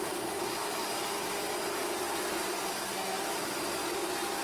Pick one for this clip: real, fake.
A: real